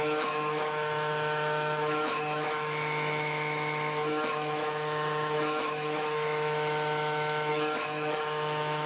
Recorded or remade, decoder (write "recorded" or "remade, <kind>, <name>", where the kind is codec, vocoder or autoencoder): remade, autoencoder, DAC-VAE